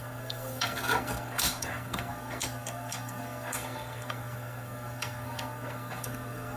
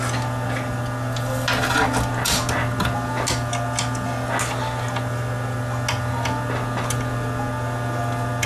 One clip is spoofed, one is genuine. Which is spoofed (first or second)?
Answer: first